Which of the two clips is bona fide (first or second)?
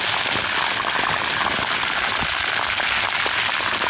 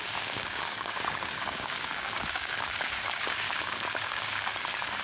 first